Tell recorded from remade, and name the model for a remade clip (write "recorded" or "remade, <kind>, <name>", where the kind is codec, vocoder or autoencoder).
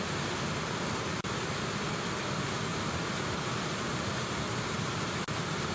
recorded